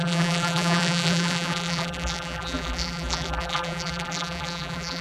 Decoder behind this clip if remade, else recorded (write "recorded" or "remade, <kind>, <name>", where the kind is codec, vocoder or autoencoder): remade, vocoder, BigVGAN v2